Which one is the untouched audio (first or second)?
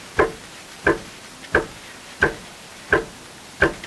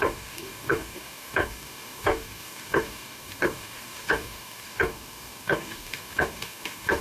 first